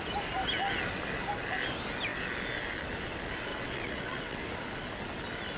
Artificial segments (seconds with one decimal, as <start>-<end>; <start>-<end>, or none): 3.5-4.4